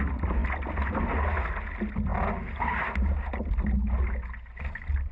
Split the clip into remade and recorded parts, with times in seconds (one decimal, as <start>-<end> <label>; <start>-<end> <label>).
0.0-5.1 recorded

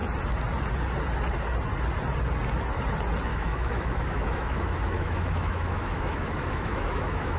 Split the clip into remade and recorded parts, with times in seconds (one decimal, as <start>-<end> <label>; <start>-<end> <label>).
0.0-3.3 recorded; 3.3-7.4 remade

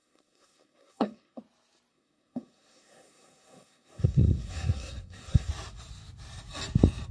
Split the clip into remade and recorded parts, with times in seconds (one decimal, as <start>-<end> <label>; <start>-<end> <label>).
0.0-1.4 remade; 1.4-1.9 recorded; 1.9-5.5 remade; 5.5-7.1 recorded

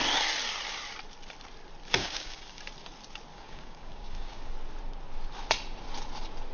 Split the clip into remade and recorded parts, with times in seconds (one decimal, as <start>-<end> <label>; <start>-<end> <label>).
0.0-2.0 recorded; 2.0-2.6 remade; 2.6-3.3 recorded; 3.3-4.5 remade; 4.5-6.5 recorded

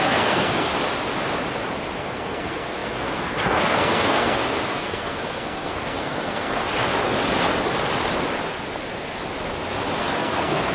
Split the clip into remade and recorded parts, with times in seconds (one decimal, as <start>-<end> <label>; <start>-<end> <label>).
0.0-0.7 remade; 0.7-2.0 recorded; 2.0-6.6 remade; 6.6-10.0 recorded; 10.0-10.7 remade

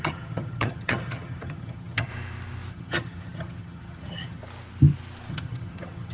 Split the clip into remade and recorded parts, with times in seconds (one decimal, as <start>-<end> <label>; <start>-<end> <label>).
0.0-2.1 remade; 2.1-2.7 recorded; 2.7-4.4 remade; 4.4-5.3 recorded; 5.3-6.1 remade

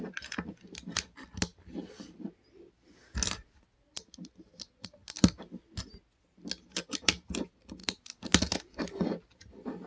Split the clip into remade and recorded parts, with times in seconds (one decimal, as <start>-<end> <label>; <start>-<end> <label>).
0.0-1.5 recorded; 1.5-2.2 remade; 2.2-9.9 recorded

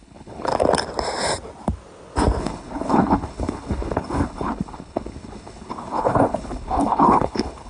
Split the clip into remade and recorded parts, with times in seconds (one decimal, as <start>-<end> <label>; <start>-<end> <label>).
0.0-0.5 remade; 0.5-2.4 recorded; 2.4-7.7 remade